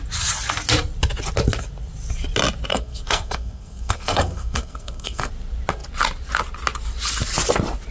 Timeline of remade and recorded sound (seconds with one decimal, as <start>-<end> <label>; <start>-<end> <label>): 0.0-2.7 recorded; 2.7-5.3 remade; 5.3-7.9 recorded